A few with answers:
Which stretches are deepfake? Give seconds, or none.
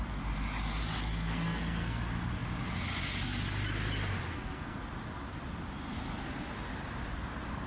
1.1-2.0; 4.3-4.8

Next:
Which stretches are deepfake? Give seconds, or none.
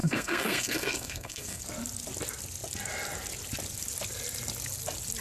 0.0-1.6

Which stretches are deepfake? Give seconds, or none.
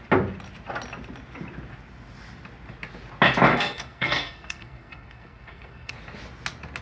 3.5-5.9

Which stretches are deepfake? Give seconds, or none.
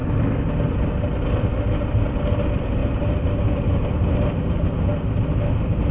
none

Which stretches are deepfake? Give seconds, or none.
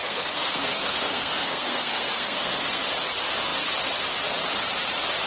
0.0-2.8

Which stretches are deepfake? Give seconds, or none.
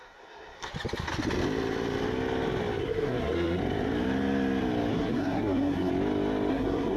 0.0-0.7; 2.8-3.6; 4.9-5.9; 6.5-7.0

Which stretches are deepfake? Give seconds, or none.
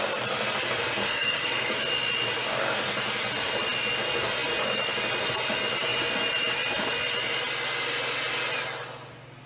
1.0-1.7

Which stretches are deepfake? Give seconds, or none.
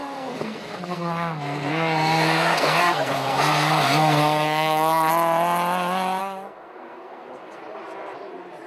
0.0-5.1; 6.2-7.6